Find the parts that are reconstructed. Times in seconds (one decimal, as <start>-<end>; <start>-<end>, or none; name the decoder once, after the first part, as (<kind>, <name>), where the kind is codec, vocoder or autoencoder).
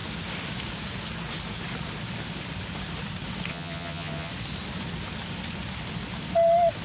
3.5-4.3 (vocoder, HiFi-GAN)